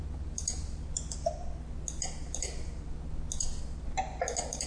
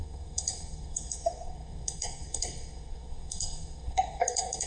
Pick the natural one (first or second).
first